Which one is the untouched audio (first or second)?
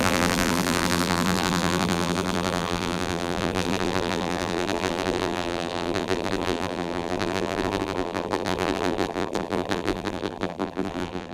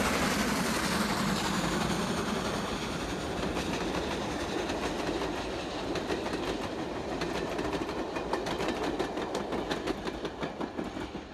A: second